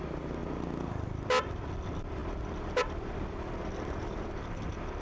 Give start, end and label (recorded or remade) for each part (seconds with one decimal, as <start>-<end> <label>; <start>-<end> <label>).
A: 0.0-5.0 recorded

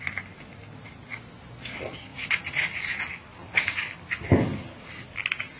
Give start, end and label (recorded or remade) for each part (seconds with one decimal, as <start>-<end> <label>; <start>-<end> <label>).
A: 0.0-5.6 recorded

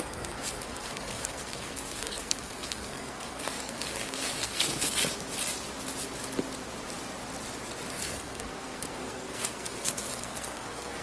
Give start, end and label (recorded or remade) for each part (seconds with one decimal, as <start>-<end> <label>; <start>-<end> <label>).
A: 0.0-5.0 remade; 5.0-7.9 recorded; 7.9-11.0 remade

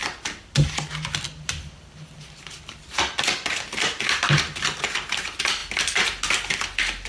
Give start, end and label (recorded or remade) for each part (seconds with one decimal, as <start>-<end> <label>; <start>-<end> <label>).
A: 0.0-7.1 recorded

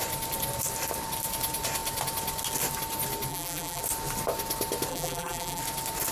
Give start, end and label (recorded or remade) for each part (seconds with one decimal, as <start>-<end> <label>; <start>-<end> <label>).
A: 0.0-3.3 recorded; 3.3-3.8 remade; 3.8-4.9 recorded; 4.9-5.6 remade; 5.6-6.1 recorded

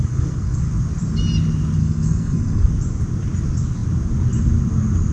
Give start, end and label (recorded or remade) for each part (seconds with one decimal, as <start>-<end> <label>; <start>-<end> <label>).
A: 0.0-0.6 remade; 0.6-1.8 recorded; 1.8-2.7 remade; 2.7-5.1 recorded